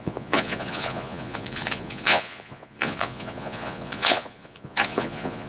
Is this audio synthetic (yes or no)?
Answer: yes